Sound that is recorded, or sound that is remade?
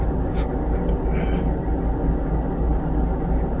recorded